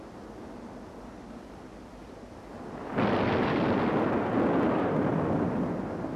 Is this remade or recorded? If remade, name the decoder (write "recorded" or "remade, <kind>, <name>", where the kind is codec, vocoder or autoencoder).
recorded